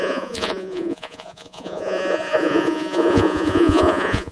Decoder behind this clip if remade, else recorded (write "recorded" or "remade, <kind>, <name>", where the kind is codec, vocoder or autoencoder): remade, vocoder, Vocos